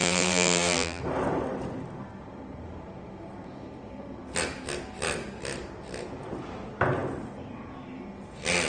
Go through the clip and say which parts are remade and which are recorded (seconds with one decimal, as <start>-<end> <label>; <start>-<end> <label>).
0.0-1.0 remade; 1.0-8.7 recorded